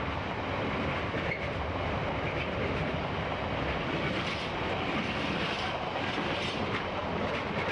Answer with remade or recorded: recorded